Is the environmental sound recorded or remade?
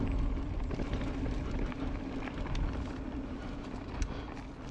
recorded